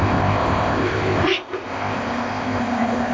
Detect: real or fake fake